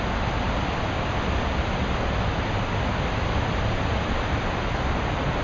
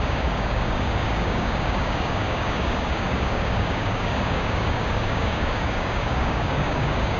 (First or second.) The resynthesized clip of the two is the second